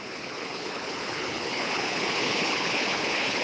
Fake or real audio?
fake